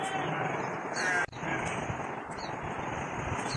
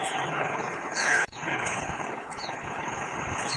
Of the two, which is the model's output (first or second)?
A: second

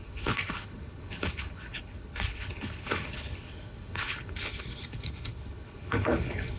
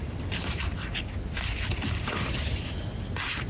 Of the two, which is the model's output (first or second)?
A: first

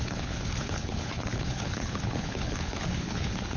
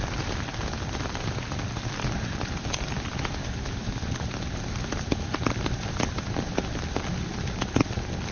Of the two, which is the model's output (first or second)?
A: first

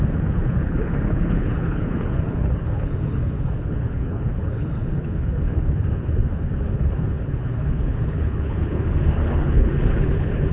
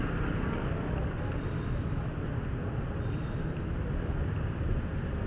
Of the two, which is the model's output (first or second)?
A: first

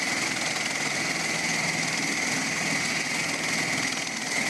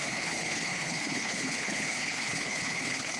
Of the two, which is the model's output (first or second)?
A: second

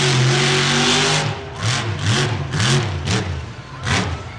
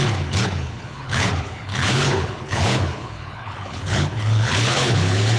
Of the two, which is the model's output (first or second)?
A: second